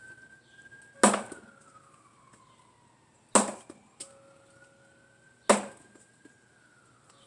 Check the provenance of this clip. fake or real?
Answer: real